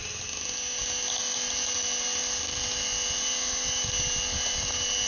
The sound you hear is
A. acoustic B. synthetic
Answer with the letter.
A